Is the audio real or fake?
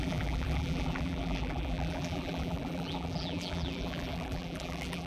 fake